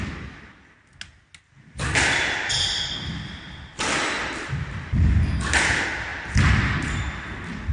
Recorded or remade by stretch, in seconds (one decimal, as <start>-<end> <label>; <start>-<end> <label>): 0.0-7.7 recorded